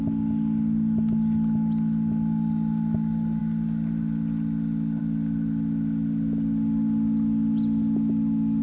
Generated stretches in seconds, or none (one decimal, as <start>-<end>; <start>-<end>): none